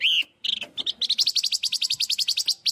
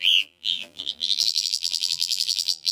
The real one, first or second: first